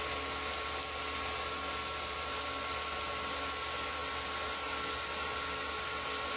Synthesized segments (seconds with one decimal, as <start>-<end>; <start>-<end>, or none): none